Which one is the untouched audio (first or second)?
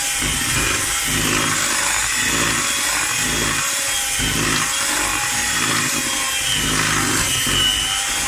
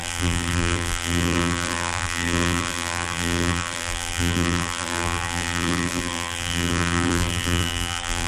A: first